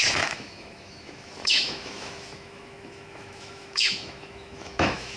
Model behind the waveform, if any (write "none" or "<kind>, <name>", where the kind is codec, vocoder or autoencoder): autoencoder, DAC-VAE